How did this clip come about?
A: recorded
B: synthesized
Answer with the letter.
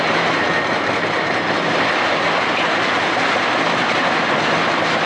A